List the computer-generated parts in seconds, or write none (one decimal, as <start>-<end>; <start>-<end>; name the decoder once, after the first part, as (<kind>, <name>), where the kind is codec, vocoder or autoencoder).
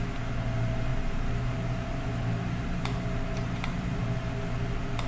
0.9-4.0 (vocoder, BigVGAN v2)